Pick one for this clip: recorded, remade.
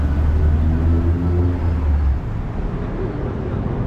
recorded